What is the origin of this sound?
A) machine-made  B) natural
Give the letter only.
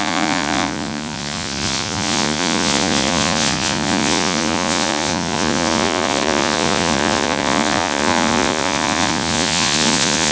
A